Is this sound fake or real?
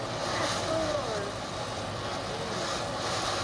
real